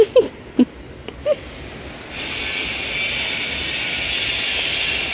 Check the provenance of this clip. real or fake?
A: real